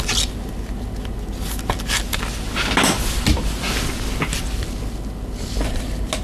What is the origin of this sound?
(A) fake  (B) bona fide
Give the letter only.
B